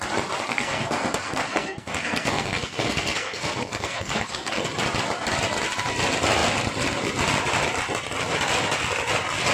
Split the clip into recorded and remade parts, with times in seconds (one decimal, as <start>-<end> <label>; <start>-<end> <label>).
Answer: 0.0-0.5 recorded; 0.5-4.7 remade; 4.7-9.5 recorded